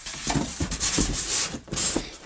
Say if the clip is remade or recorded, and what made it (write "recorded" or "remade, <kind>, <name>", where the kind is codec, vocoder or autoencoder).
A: remade, vocoder, BigVGAN v2